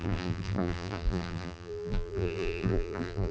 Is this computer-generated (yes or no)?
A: yes